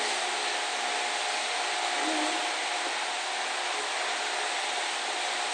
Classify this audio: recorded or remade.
recorded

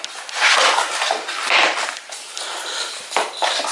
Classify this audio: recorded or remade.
recorded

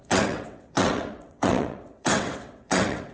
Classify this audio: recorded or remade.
remade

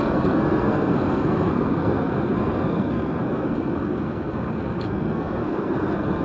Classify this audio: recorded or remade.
remade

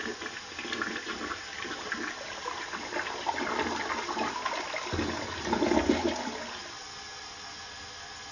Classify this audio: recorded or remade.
recorded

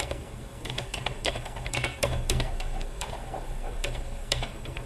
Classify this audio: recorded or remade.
remade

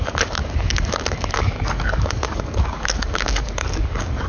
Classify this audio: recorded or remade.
remade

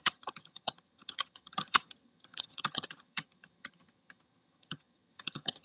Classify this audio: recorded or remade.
remade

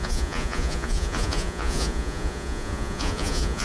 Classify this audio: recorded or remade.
remade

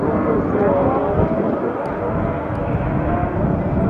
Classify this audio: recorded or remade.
recorded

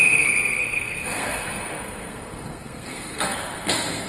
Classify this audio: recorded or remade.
remade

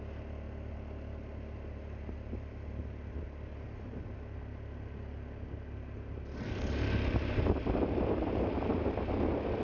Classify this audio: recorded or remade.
recorded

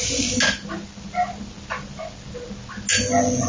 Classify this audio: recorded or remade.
recorded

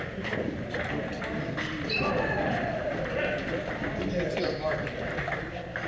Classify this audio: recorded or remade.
recorded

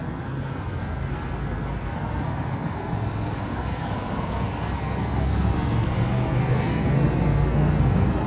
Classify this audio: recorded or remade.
remade